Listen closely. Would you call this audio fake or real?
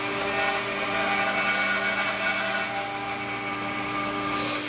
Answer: real